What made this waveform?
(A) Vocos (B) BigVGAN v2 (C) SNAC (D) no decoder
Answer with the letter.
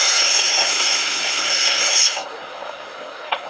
C